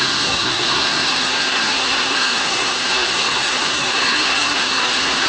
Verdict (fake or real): fake